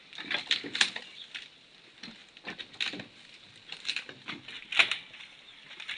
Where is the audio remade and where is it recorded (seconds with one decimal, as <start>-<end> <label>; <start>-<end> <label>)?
0.0-6.0 recorded